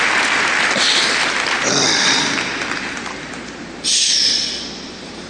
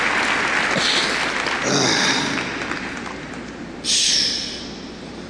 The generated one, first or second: first